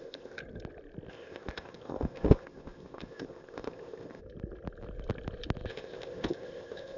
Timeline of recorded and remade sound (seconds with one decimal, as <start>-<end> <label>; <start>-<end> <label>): 0.0-0.4 remade; 0.4-1.1 recorded; 1.1-4.2 remade; 4.2-5.7 recorded; 5.7-7.0 remade